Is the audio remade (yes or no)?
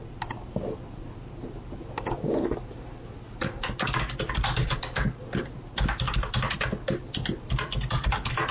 no